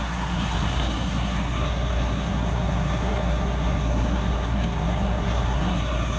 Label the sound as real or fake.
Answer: fake